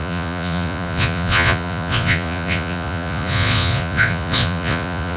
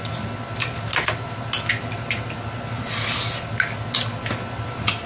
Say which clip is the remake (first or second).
first